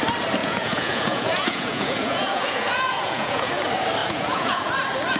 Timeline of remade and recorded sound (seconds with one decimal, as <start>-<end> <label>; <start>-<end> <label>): 0.0-0.4 recorded; 0.4-3.5 remade; 3.5-4.0 recorded; 4.0-4.7 remade; 4.7-5.2 recorded